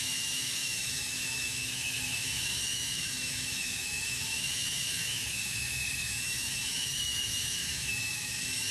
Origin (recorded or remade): remade